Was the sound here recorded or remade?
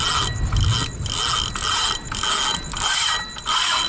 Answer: recorded